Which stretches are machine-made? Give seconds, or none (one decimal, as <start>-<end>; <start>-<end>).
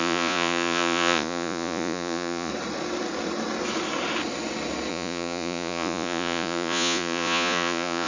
0.0-2.5; 4.9-8.1